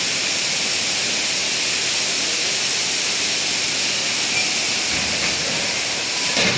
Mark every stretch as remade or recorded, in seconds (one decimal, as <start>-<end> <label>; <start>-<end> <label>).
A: 0.0-6.6 recorded